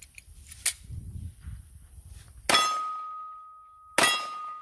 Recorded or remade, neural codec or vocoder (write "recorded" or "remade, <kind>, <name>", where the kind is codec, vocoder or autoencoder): recorded